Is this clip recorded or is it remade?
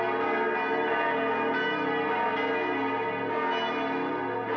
recorded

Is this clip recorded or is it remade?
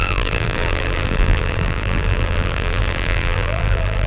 remade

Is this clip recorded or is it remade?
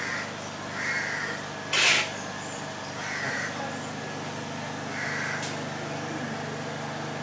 recorded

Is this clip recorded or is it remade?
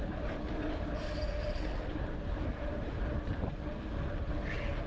recorded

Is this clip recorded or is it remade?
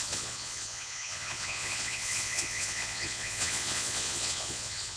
remade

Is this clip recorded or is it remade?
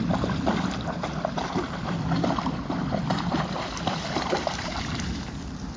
remade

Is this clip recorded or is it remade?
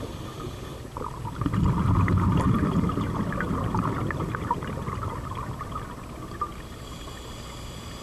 recorded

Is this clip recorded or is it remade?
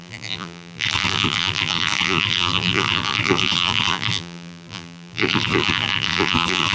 remade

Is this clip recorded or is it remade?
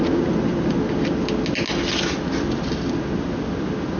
recorded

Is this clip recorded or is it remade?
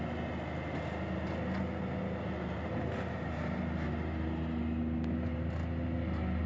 recorded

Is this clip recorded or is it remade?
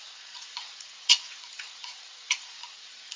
remade